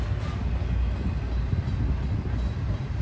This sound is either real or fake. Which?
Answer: real